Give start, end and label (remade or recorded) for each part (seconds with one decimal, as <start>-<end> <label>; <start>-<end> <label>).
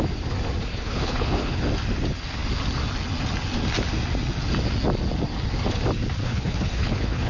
0.0-0.7 recorded; 0.7-1.6 remade; 1.6-6.2 recorded; 6.2-7.3 remade